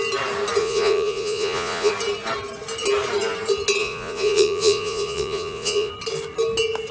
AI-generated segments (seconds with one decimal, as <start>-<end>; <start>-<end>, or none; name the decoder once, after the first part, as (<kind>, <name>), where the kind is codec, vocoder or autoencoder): 0.6-1.9 (vocoder, Vocos); 3.8-5.9